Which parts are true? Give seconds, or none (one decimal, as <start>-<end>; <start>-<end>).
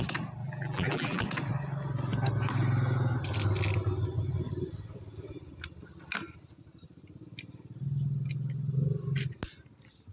0.0-0.4; 1.2-10.1